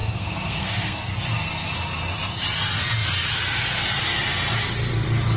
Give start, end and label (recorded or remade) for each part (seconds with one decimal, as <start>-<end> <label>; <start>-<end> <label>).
0.0-1.1 remade; 1.1-5.4 recorded